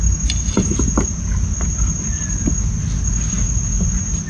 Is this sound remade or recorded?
recorded